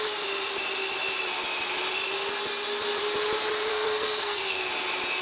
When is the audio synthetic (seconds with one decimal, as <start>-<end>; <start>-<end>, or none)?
3.7-4.7